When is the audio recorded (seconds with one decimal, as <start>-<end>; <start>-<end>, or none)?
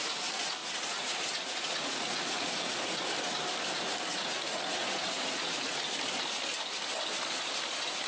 0.0-0.6; 3.0-4.1; 5.8-8.1